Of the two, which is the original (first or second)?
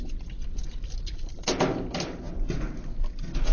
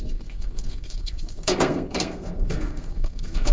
first